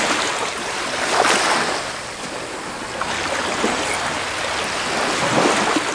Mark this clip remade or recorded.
recorded